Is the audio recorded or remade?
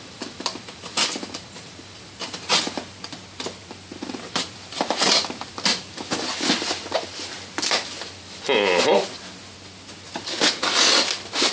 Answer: recorded